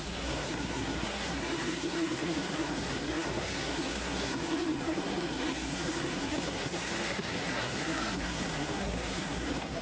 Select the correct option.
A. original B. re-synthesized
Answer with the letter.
B